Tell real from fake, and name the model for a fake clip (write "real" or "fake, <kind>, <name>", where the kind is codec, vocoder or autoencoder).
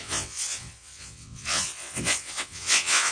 fake, vocoder, WaveNeXt